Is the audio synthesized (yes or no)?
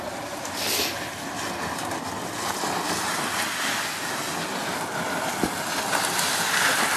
no